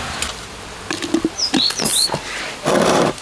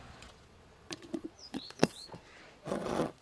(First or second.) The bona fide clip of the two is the first